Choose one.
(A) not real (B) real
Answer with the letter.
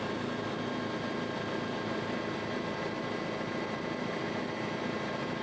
B